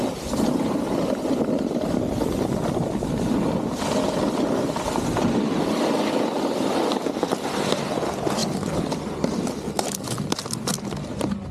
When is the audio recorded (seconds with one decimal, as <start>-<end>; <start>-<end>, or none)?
0.0-11.5